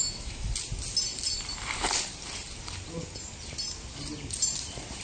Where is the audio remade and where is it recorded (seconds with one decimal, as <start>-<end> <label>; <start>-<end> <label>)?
0.0-0.5 remade; 0.5-5.0 recorded